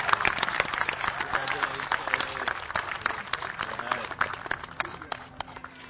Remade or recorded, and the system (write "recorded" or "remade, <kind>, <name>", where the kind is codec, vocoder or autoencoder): remade, vocoder, BigVGAN v2